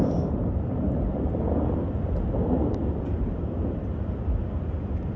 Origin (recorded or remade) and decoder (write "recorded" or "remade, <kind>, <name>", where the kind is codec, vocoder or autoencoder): recorded